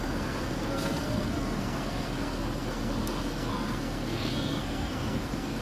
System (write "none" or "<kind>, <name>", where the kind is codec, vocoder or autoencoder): codec, SNAC